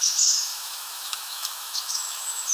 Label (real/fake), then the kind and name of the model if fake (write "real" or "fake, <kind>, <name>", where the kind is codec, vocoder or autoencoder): fake, autoencoder, DAC-VAE